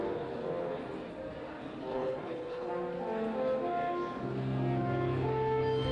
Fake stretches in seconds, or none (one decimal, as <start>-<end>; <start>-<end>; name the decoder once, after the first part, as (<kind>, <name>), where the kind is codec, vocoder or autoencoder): 1.9-2.7 (codec, HILCodec)